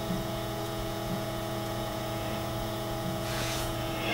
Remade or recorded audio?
remade